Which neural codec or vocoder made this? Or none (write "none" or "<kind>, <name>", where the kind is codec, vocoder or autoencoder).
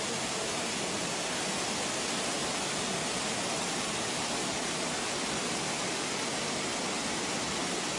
none